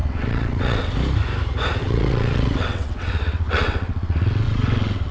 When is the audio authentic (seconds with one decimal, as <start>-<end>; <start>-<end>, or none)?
0.9-1.8